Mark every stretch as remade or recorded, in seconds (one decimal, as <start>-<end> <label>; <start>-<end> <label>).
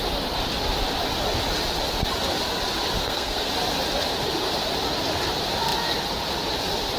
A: 0.0-3.0 recorded; 3.0-3.5 remade; 3.5-7.0 recorded